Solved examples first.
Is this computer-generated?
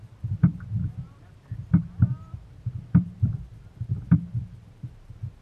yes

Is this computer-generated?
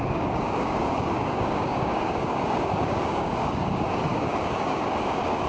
yes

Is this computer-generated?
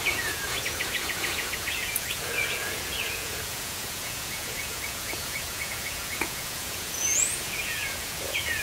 yes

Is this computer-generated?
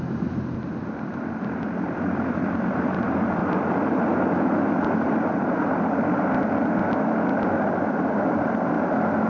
no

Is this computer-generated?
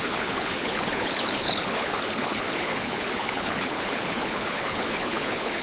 yes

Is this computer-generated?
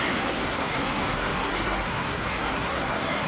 yes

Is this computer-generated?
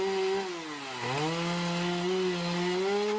no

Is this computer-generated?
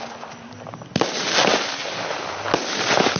no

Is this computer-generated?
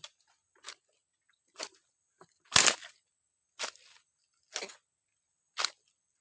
no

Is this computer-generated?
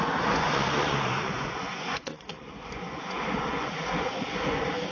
yes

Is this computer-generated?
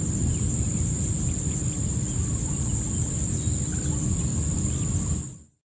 no